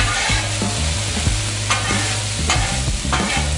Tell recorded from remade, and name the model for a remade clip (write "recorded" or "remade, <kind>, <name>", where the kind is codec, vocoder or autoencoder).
recorded